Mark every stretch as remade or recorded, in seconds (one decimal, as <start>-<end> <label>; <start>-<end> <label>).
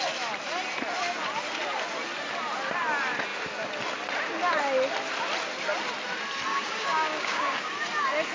0.0-6.5 recorded; 6.5-7.7 remade; 7.7-8.3 recorded